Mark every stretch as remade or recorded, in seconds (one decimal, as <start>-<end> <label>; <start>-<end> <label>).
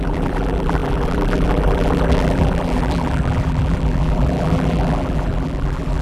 0.0-6.0 remade